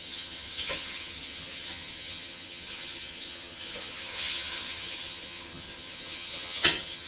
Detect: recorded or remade remade